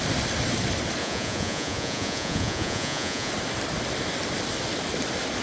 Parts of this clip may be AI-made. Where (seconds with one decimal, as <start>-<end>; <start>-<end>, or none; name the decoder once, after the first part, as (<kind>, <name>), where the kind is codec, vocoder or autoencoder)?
1.0-3.3 (vocoder, Vocos)